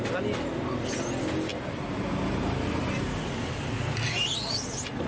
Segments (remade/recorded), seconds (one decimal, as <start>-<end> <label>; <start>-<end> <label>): 0.0-5.1 recorded